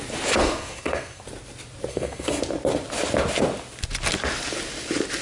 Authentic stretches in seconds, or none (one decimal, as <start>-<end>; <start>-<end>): 0.0-0.4; 1.2-1.9; 2.4-5.2